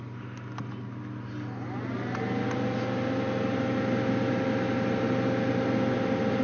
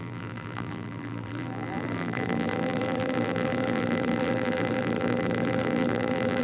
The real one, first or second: first